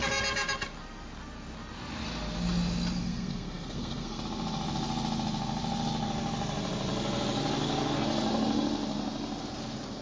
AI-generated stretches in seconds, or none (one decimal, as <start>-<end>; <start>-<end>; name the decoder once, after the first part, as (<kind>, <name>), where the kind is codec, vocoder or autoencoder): 3.0-4.2 (codec, SNAC)